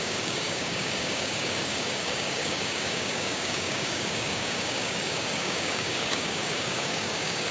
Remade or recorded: remade